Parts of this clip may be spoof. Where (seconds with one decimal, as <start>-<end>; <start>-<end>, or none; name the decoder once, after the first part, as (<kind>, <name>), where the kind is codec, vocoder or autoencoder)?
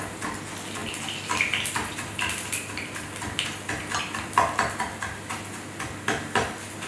none